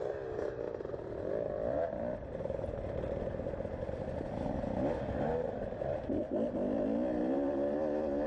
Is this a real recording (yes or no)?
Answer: yes